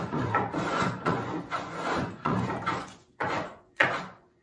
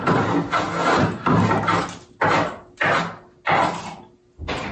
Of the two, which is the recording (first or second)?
second